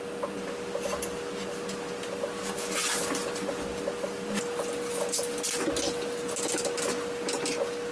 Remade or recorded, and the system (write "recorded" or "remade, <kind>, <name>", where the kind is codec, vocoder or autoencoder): recorded